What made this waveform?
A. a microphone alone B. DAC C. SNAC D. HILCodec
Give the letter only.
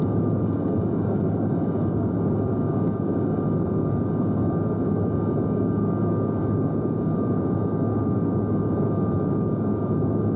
B